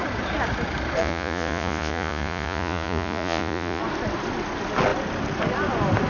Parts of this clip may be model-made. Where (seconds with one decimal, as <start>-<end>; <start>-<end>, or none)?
1.0-3.8